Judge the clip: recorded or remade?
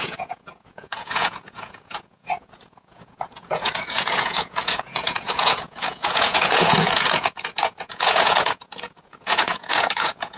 remade